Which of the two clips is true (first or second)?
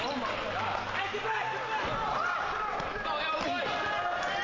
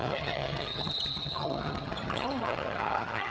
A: first